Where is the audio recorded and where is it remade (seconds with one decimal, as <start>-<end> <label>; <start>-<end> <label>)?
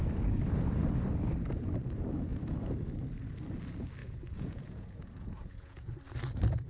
0.0-4.0 recorded; 4.0-6.0 remade; 6.0-6.7 recorded